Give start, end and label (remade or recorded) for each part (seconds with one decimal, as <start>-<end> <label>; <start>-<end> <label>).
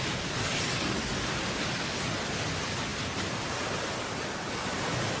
0.0-5.2 recorded